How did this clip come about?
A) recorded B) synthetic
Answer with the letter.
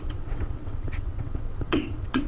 B